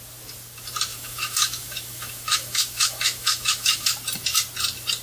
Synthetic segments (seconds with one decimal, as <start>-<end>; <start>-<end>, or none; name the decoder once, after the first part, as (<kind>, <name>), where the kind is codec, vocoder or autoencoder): 0.9-3.9 (autoencoder, DAC-VAE)